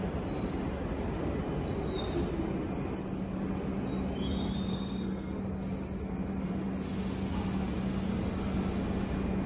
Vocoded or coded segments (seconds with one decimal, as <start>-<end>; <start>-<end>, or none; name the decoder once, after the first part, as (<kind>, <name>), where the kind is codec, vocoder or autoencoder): 4.7-5.4 (codec, SNAC)